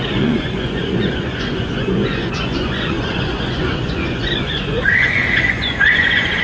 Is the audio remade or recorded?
remade